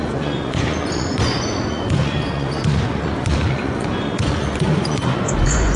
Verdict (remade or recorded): remade